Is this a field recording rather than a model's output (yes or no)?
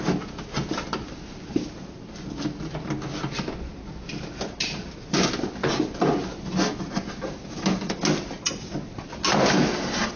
yes